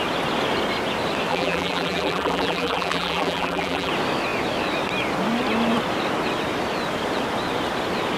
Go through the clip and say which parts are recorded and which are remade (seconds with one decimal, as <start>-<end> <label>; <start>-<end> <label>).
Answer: 0.0-1.3 recorded; 1.3-3.9 remade; 3.9-8.2 recorded